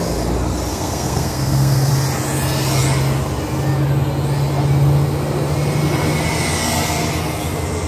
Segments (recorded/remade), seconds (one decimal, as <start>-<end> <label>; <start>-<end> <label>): 0.0-0.7 recorded; 0.7-1.9 remade; 1.9-7.9 recorded